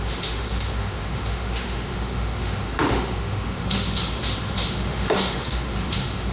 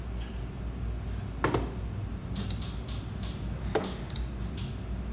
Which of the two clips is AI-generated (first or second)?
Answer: first